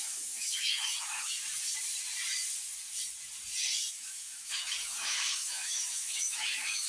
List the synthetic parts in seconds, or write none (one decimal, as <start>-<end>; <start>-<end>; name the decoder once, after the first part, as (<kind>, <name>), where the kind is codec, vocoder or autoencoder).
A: 0.0-1.4 (autoencoder, DAC-VAE); 3.6-6.9